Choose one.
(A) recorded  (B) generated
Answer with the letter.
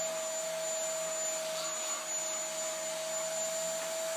A